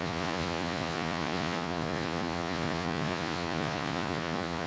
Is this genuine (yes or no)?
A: no